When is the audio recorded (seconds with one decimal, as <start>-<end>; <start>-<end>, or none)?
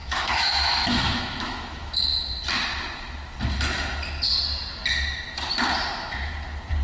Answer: 1.9-6.8